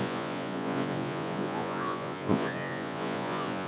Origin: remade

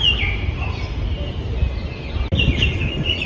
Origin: recorded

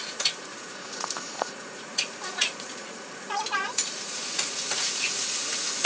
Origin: remade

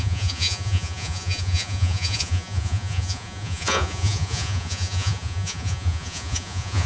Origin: remade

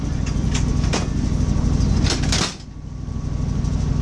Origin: recorded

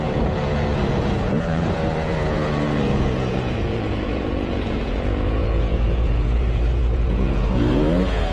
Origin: remade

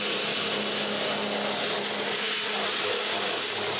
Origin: recorded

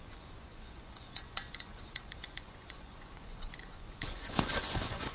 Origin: remade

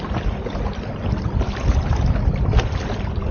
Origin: recorded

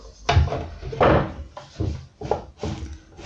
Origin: recorded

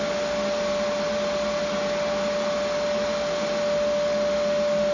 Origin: recorded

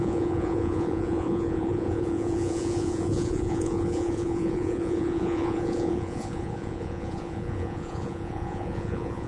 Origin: remade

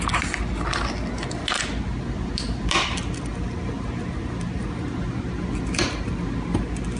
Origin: recorded